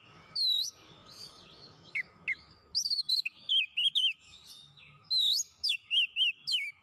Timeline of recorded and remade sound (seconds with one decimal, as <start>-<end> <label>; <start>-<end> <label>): 0.0-6.8 remade